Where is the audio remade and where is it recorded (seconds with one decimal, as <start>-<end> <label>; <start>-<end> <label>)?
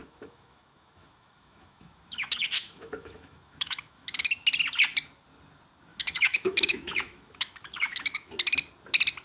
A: 0.0-4.3 remade; 4.3-5.9 recorded; 5.9-8.3 remade; 8.3-9.2 recorded